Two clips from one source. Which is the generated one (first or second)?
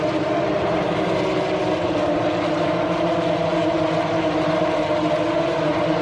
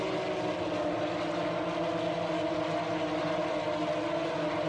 first